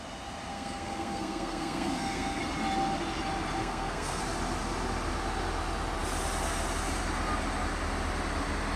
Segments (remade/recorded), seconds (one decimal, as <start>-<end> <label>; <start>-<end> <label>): 0.0-0.5 recorded; 0.5-2.4 remade; 2.4-3.6 recorded; 3.6-4.2 remade; 4.2-8.8 recorded